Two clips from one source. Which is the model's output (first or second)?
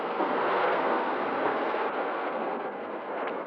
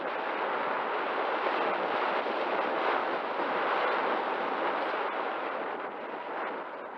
first